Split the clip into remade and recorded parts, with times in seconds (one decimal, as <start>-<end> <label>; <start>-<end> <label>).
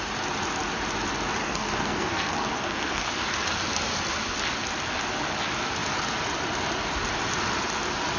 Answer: 0.0-1.4 recorded; 1.4-3.1 remade; 3.1-8.2 recorded